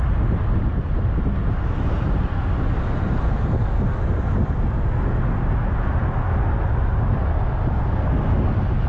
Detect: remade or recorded recorded